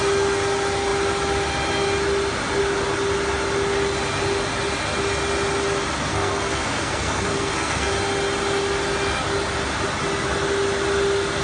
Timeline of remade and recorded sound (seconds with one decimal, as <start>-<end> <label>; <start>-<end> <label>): 0.0-6.1 recorded; 6.1-7.9 remade; 7.9-11.4 recorded